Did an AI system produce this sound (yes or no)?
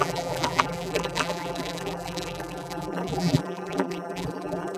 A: yes